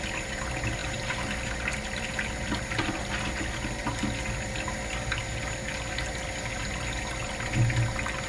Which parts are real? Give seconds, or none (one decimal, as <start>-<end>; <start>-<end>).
0.0-8.3